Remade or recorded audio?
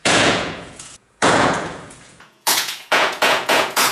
remade